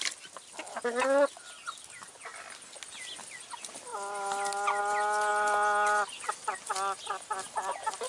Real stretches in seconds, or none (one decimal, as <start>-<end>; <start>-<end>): 0.0-8.1